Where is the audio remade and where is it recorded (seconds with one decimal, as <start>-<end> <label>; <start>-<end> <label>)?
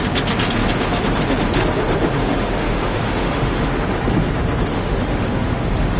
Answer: 0.0-2.2 recorded; 2.2-3.6 remade; 3.6-4.7 recorded; 4.7-6.0 remade